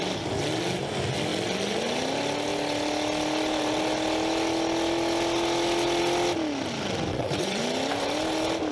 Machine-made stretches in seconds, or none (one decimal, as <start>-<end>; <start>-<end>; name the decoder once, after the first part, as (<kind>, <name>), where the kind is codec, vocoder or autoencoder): 7.1-7.6 (vocoder, WaveNeXt)